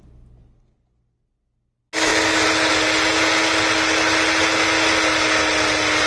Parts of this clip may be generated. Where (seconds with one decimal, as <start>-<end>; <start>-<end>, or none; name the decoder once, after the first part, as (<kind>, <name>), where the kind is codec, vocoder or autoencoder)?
none